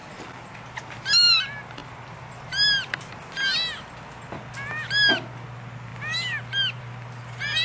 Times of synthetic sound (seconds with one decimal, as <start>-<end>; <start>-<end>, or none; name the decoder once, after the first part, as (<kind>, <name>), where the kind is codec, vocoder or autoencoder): none